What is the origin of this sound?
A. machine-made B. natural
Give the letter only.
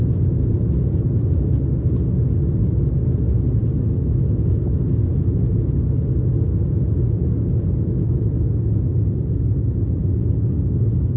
B